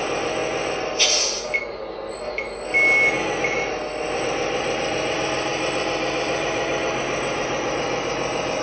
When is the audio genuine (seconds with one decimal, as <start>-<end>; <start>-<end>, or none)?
0.4-4.2